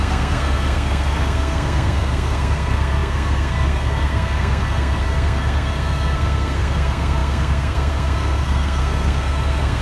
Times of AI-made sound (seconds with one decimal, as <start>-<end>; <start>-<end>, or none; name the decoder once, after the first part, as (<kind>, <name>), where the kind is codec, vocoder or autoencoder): 0.0-9.8 (codec, SNAC)